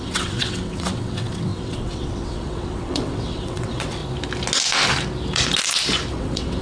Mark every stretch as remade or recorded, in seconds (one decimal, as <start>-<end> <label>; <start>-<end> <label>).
0.0-4.0 remade; 4.0-6.1 recorded; 6.1-6.6 remade